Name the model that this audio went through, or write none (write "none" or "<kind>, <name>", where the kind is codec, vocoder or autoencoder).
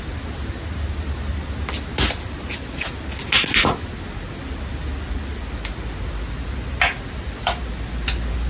none